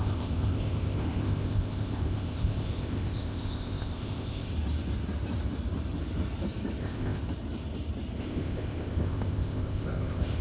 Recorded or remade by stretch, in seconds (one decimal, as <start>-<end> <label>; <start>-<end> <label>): 0.0-4.5 remade; 4.5-6.8 recorded; 6.8-7.2 remade; 7.2-8.2 recorded; 8.2-10.4 remade